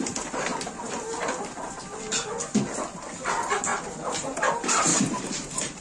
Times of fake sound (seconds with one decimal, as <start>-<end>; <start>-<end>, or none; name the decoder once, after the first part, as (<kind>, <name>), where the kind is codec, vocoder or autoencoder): 3.7-4.4 (vocoder, BigVGAN v2); 4.9-5.8